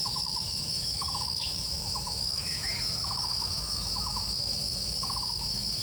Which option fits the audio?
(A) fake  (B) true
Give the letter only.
A